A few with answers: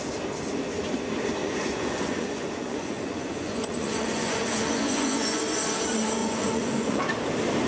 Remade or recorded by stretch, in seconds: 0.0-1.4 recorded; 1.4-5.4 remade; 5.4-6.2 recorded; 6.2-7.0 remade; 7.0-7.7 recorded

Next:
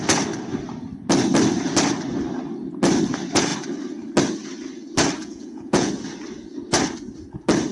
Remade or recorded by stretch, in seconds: 0.0-5.2 recorded; 5.2-5.9 remade; 5.9-7.7 recorded

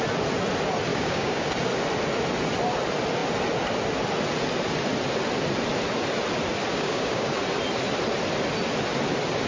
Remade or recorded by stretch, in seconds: 0.0-0.9 recorded; 0.9-1.5 remade; 1.5-6.7 recorded; 6.7-7.3 remade; 7.3-9.5 recorded